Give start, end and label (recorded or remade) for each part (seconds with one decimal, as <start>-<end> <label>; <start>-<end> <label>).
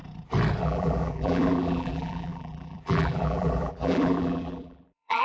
0.0-0.6 recorded; 0.6-5.2 remade